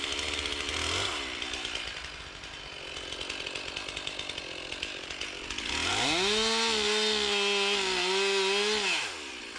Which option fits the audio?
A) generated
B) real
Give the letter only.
B